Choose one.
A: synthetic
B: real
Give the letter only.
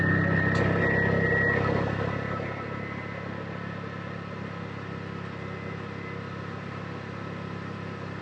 B